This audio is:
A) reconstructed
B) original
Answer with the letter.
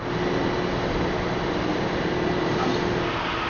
B